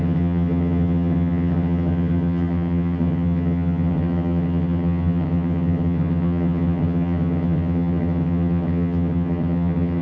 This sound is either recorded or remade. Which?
remade